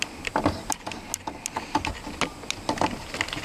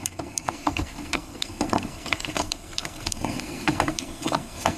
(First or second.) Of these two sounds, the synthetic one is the second